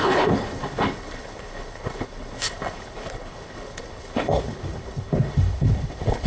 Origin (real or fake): fake